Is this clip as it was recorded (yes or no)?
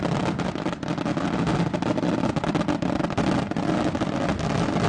yes